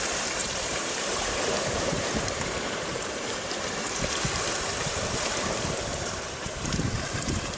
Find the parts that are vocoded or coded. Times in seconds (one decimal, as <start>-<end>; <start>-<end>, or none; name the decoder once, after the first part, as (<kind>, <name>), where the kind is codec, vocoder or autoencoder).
0.4-4.0 (vocoder, BigVGAN v2); 5.9-7.6